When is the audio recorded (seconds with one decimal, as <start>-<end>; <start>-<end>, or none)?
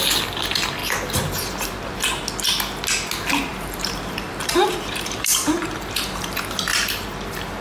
0.0-3.5; 6.3-7.6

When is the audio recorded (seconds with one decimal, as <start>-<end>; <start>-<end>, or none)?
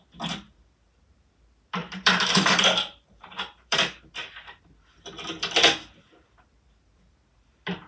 0.0-1.8; 4.0-7.9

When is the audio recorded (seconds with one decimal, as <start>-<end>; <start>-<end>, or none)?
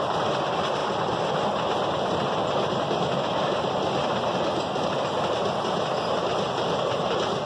0.0-7.5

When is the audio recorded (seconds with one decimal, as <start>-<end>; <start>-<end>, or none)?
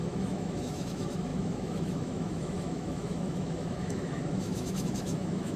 none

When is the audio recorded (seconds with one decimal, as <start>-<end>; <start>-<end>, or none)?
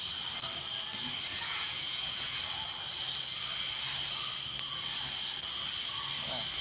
0.0-1.3; 2.4-6.6